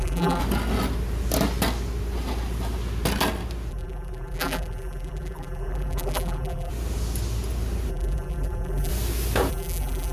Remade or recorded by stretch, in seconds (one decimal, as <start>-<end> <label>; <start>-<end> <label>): 0.0-0.4 remade; 0.4-3.7 recorded; 3.7-6.7 remade; 6.7-7.9 recorded; 7.9-8.9 remade; 8.9-9.5 recorded; 9.5-10.1 remade